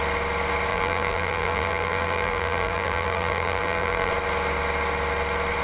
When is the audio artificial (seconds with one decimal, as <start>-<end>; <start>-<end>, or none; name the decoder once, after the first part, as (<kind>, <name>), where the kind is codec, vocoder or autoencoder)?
0.7-4.1 (vocoder, BigVGAN v2)